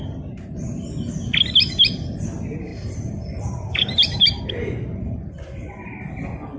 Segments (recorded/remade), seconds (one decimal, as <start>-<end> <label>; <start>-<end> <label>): 0.0-2.7 recorded; 2.7-4.4 remade; 4.4-6.6 recorded